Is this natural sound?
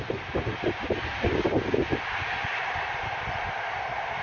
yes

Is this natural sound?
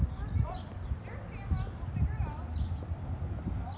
yes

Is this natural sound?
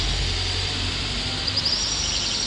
yes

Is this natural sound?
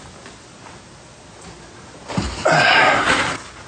yes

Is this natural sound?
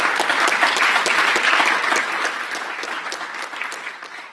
yes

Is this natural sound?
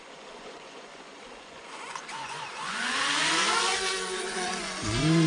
no